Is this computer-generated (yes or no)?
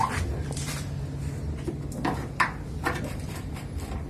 yes